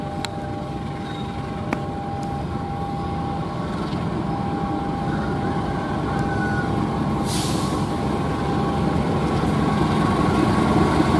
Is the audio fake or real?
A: real